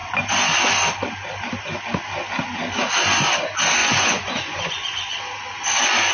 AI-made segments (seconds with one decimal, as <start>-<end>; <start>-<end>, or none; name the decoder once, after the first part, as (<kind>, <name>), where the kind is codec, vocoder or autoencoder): 3.8-5.2 (vocoder, Vocos)